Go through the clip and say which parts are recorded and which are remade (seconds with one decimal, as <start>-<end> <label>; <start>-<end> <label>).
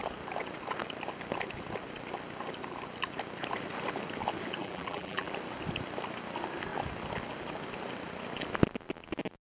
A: 0.0-4.6 recorded; 4.6-5.3 remade; 5.3-9.6 recorded